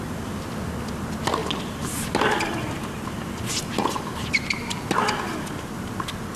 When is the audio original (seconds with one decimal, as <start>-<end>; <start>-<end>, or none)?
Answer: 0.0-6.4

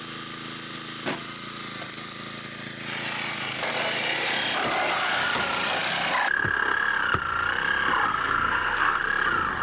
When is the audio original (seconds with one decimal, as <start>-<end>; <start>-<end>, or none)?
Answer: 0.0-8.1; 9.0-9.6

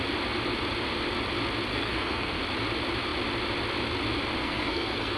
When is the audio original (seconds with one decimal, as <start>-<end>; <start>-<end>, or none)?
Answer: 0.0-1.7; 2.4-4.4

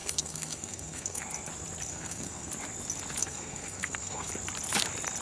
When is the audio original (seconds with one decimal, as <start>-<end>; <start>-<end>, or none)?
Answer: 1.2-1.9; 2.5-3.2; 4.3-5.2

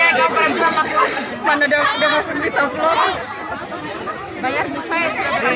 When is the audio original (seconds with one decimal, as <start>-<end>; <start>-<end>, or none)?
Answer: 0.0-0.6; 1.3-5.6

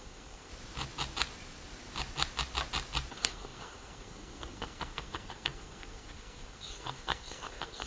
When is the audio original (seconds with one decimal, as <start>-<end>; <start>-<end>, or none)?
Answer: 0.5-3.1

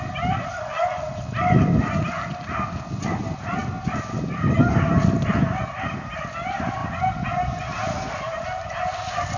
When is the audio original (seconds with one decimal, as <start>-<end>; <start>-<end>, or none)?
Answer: 0.0-9.4